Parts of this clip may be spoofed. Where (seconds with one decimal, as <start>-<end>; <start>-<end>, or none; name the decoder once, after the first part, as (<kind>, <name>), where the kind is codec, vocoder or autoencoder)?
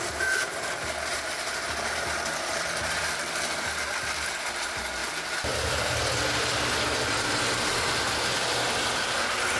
2.5-3.2 (vocoder, BigVGAN v2); 5.0-6.0